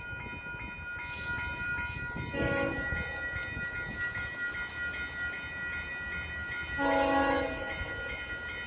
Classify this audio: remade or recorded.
recorded